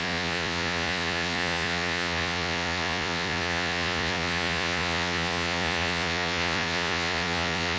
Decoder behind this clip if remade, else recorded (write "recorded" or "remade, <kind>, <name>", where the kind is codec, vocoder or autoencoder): remade, vocoder, Vocos